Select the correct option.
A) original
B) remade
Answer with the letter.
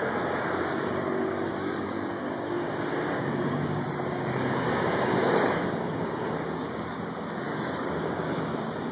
B